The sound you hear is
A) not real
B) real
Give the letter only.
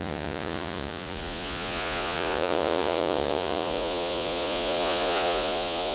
A